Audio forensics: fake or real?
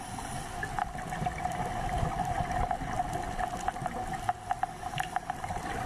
real